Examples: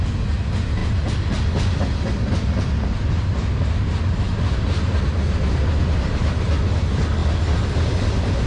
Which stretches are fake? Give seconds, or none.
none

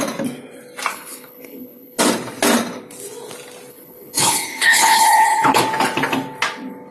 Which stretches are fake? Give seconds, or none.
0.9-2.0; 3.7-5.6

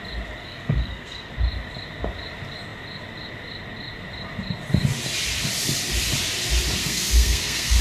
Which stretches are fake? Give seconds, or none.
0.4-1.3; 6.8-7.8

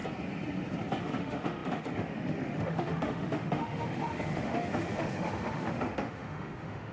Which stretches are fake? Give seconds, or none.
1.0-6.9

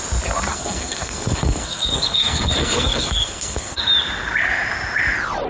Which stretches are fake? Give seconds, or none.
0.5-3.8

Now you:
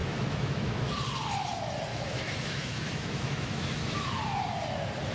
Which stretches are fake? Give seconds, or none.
0.0-0.9; 1.9-4.1

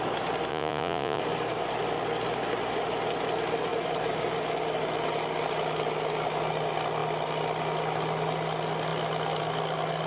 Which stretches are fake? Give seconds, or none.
0.5-1.2

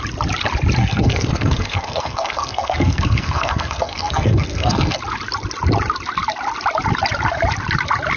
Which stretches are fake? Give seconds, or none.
0.8-5.0